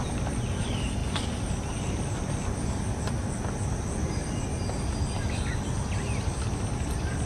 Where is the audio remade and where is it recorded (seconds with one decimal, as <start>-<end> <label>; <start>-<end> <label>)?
0.0-7.3 recorded